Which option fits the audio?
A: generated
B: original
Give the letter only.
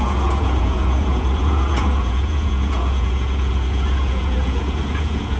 A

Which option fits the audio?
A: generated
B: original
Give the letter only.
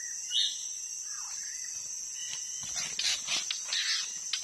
B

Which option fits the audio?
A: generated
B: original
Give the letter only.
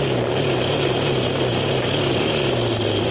B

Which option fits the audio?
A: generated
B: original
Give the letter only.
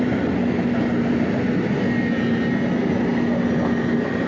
B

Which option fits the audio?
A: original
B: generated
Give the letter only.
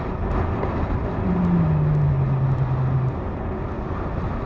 A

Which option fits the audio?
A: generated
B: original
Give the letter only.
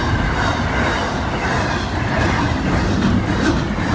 B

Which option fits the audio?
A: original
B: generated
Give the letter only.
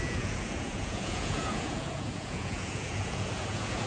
B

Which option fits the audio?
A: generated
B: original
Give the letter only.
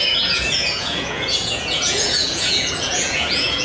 A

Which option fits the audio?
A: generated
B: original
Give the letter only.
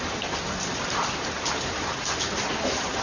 B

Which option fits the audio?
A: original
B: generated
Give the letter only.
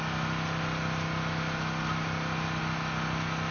A